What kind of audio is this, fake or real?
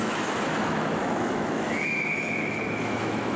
fake